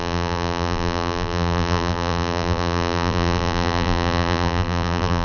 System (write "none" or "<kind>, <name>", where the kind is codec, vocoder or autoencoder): vocoder, BigVGAN v2